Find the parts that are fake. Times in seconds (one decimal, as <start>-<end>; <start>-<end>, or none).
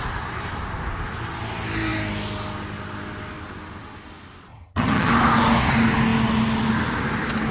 4.5-5.1